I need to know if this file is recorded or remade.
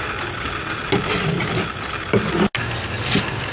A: recorded